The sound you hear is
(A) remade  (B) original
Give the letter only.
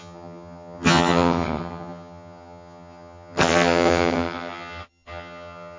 A